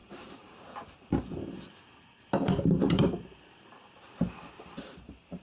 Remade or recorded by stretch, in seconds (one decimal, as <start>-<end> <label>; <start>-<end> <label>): 0.0-5.4 remade